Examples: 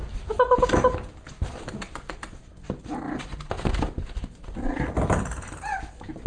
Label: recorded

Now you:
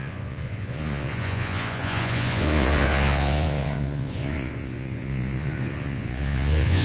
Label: remade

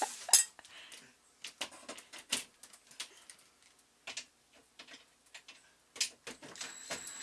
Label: recorded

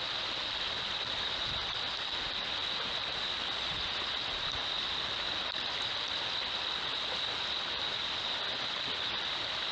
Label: recorded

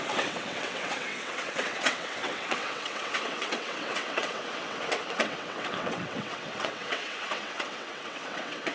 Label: remade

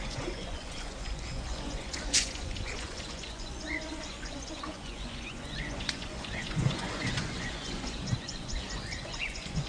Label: remade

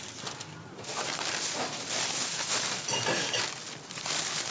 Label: recorded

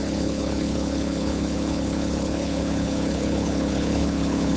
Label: remade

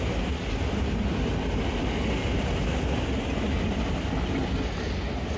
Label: recorded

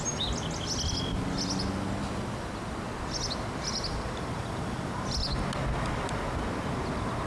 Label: recorded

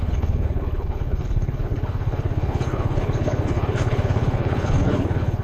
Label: remade